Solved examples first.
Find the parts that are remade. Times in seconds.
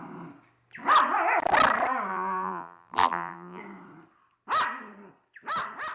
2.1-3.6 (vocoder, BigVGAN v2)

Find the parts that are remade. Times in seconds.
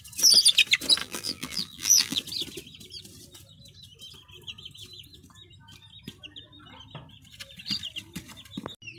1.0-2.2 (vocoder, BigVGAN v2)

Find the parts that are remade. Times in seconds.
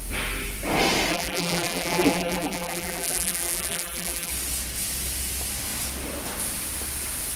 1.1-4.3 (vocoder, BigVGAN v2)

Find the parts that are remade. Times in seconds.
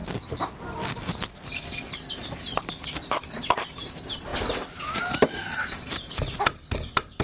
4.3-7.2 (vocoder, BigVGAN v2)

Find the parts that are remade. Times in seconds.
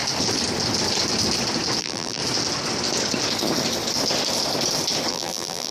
1.8-2.2 (vocoder, BigVGAN v2); 5.1-5.7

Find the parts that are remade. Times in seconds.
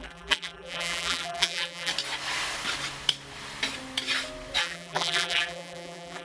0.0-1.9 (vocoder, BigVGAN v2); 4.6-6.2